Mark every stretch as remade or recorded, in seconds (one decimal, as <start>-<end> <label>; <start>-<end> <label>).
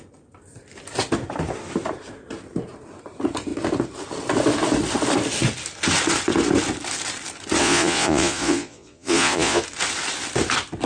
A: 0.0-7.6 recorded; 7.6-9.6 remade; 9.6-10.9 recorded